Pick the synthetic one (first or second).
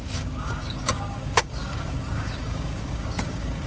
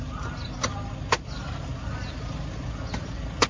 first